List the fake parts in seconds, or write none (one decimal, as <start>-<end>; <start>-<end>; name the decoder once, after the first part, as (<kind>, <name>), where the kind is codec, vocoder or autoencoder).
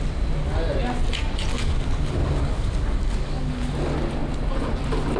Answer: 1.5-3.7 (codec, DAC)